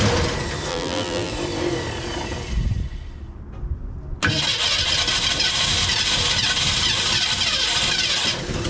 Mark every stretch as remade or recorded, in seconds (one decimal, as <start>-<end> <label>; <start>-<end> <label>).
0.0-0.7 recorded; 0.7-1.3 remade; 1.3-8.7 recorded